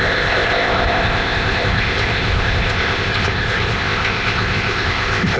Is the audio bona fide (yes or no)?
no